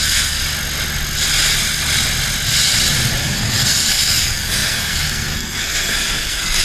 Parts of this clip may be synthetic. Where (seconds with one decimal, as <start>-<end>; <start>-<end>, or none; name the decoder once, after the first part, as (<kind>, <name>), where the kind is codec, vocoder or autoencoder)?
0.0-0.4 (codec, SNAC); 3.2-6.6